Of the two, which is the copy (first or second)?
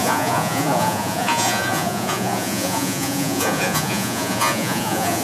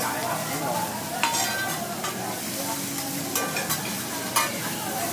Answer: first